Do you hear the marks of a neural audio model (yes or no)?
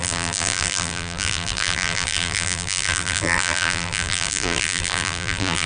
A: yes